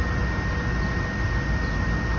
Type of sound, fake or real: real